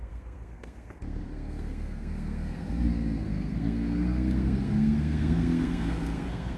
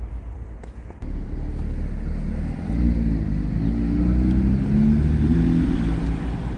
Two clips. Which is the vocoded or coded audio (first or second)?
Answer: first